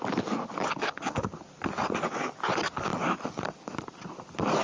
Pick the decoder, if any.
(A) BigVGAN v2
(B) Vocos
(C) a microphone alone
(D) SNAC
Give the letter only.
C